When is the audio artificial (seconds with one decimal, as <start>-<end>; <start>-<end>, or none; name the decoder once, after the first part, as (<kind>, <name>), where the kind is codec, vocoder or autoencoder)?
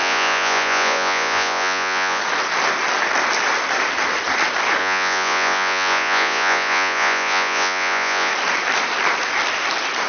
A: 0.0-2.2 (vocoder, Vocos); 4.8-8.3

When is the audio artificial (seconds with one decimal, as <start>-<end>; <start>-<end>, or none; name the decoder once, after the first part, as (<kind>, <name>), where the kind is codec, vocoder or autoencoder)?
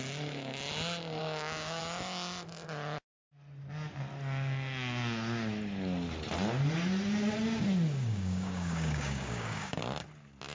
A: 1.2-1.8 (codec, DAC); 8.0-9.8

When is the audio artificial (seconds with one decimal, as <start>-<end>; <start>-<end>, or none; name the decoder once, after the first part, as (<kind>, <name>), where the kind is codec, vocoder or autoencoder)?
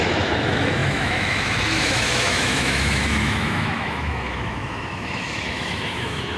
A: 0.0-6.4 (autoencoder, DAC-VAE)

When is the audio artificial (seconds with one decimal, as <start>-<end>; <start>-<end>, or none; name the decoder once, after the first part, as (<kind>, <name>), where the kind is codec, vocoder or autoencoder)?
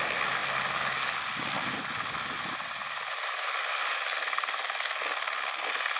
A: none